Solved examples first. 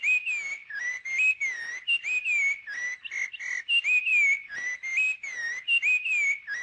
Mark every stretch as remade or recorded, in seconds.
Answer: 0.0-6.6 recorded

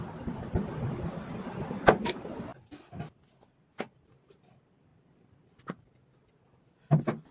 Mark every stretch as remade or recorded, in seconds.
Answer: 0.0-2.5 remade; 2.5-4.3 recorded; 4.3-4.9 remade; 4.9-6.3 recorded; 6.3-7.3 remade

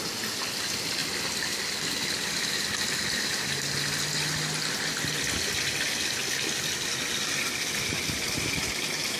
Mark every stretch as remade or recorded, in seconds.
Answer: 0.0-9.2 recorded